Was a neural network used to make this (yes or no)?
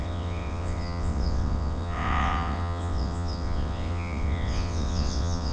yes